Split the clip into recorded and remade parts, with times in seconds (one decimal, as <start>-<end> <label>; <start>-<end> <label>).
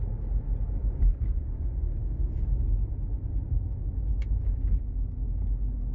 0.0-0.8 recorded; 0.8-1.6 remade; 1.6-5.9 recorded